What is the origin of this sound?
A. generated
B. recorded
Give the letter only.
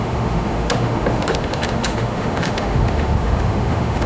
A